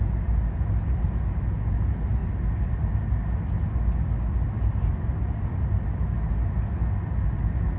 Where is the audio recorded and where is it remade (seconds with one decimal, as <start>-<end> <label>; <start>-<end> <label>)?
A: 0.0-7.8 recorded